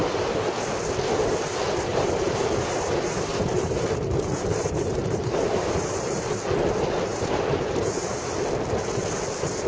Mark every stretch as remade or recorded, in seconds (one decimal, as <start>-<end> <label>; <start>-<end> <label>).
0.0-1.9 recorded; 1.9-6.5 remade; 6.5-7.1 recorded; 7.1-8.2 remade; 8.2-9.7 recorded